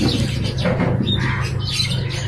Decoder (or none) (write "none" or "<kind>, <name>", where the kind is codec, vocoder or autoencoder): none